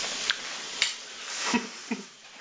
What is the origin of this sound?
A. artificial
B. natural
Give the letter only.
A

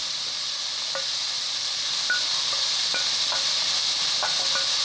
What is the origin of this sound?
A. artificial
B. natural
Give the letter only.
B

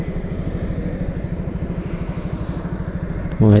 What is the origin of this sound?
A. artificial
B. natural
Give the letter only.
A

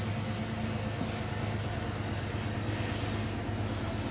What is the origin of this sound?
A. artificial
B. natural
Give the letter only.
B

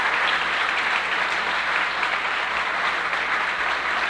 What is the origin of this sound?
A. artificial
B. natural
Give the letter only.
B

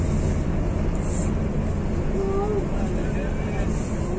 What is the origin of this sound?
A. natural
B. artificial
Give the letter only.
A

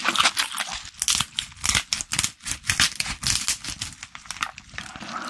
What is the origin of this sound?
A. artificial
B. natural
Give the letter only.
B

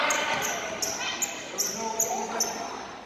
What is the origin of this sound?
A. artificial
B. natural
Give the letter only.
B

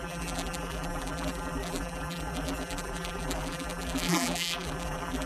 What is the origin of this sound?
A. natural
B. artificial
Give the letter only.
B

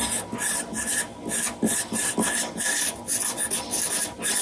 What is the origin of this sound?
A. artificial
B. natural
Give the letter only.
B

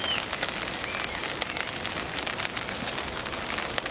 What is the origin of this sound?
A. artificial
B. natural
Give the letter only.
B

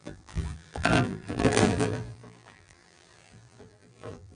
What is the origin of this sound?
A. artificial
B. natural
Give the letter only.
A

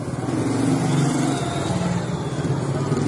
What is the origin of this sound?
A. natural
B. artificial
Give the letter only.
A